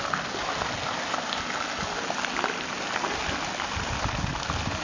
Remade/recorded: recorded